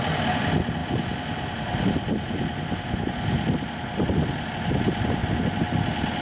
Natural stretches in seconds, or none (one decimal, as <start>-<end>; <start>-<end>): 0.0-6.2